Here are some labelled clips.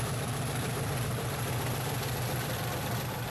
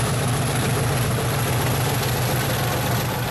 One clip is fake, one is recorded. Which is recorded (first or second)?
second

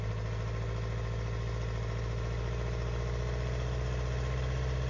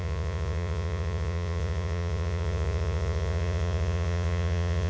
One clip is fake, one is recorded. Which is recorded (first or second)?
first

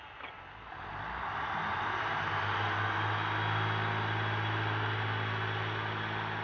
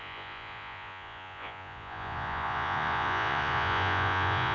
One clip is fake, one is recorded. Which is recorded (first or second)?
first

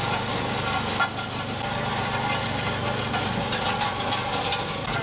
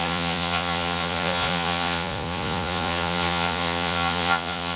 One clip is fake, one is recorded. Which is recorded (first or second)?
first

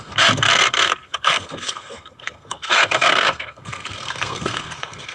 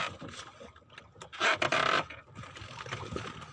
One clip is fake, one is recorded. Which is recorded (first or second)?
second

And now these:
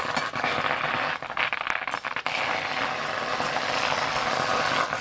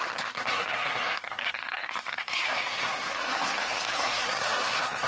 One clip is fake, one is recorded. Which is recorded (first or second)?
first